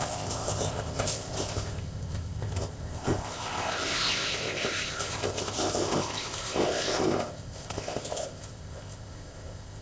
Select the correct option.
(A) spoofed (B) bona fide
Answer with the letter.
A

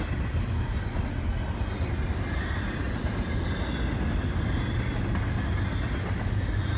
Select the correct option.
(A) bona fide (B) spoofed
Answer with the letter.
A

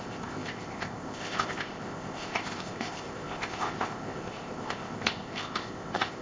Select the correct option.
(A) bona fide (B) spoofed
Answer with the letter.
B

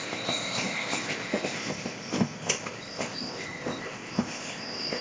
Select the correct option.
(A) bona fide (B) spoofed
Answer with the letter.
B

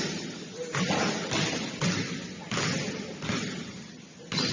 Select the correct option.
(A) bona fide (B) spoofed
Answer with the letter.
A